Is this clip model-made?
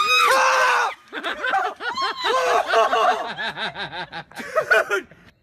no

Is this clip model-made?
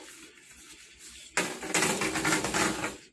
no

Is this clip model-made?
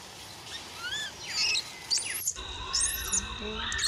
no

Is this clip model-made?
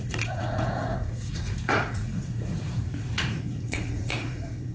yes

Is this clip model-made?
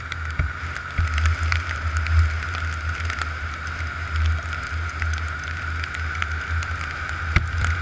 no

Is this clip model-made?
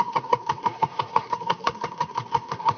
yes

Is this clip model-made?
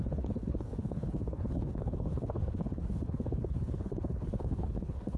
yes